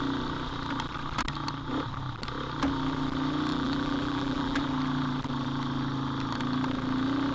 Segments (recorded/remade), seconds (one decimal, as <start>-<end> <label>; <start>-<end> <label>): 0.0-3.5 recorded; 3.5-4.6 remade; 4.6-7.3 recorded